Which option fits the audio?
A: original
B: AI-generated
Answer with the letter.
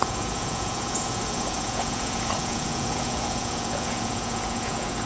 B